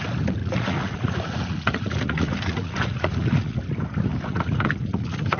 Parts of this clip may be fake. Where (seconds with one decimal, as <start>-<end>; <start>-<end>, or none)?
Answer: 0.4-3.6; 4.1-5.4